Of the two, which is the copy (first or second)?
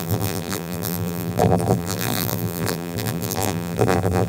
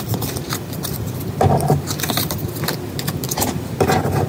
first